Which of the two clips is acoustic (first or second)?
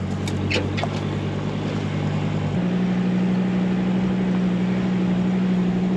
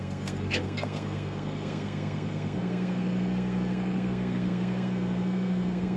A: first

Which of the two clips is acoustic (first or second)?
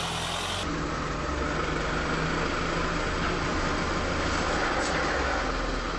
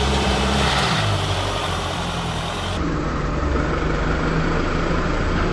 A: first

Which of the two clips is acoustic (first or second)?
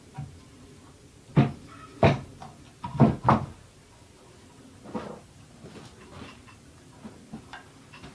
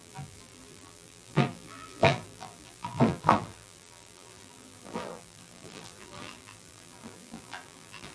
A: first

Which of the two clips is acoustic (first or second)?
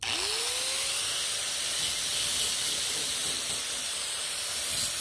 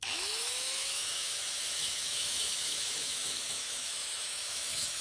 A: first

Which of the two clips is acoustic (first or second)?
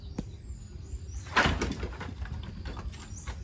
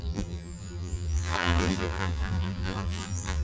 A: first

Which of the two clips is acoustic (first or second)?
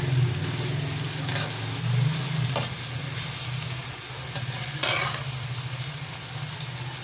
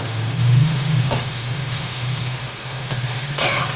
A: first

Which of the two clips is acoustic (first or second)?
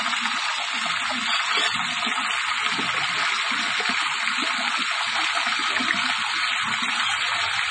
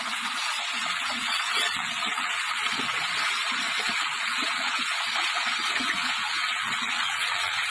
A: first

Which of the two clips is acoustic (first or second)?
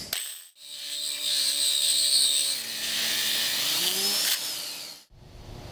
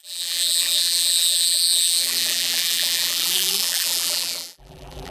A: first